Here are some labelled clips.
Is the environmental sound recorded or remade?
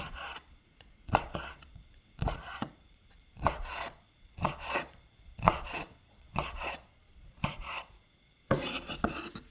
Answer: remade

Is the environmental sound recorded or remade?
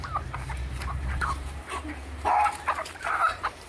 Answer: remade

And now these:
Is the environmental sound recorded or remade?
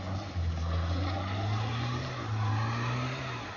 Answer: recorded